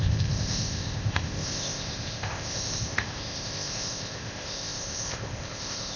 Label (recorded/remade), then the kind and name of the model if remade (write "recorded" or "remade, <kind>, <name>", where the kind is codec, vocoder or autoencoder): remade, codec, ZipCodec